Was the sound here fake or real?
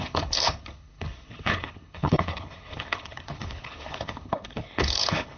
fake